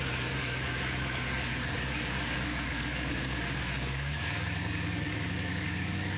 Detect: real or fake fake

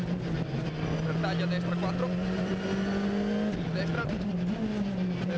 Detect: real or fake real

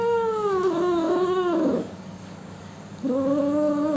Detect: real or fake fake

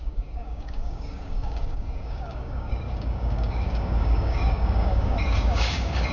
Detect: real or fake fake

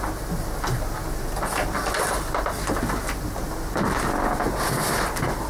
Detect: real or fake real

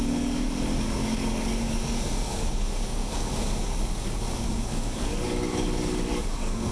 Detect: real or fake fake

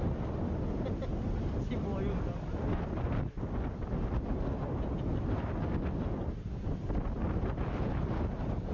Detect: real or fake real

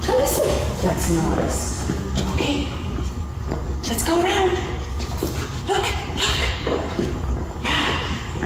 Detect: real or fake fake